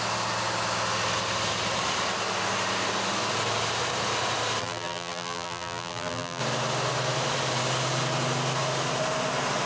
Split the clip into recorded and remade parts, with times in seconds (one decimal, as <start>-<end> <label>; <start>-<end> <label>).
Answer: 0.0-4.6 recorded; 4.6-6.4 remade; 6.4-9.7 recorded